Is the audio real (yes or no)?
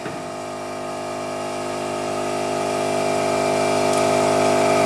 yes